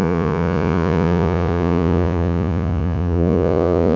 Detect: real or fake fake